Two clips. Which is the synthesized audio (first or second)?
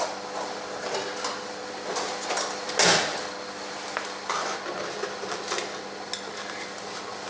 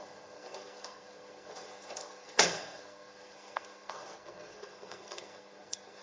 second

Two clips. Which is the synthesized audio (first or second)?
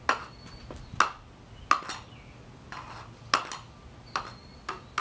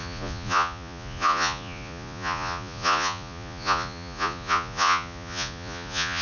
second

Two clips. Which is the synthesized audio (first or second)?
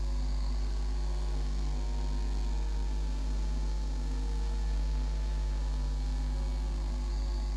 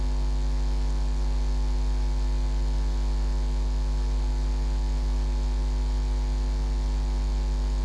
first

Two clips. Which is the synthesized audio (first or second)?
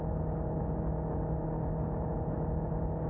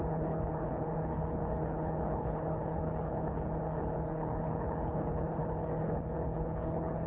second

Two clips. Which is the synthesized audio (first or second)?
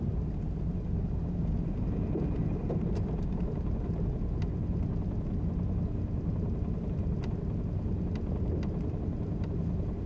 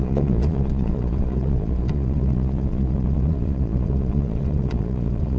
second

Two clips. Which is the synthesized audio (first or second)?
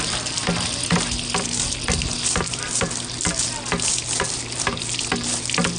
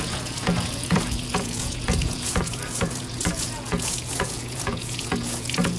second